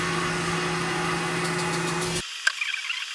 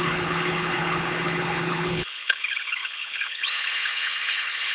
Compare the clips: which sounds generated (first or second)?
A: second